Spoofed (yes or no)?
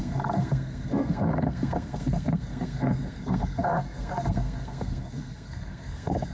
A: yes